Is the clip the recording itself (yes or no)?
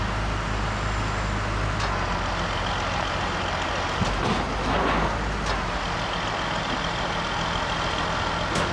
yes